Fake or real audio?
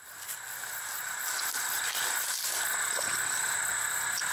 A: real